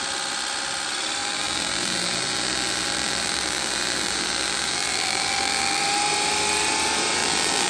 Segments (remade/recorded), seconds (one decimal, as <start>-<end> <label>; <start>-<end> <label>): 0.0-1.2 recorded; 1.2-5.8 remade; 5.8-7.2 recorded; 7.2-7.7 remade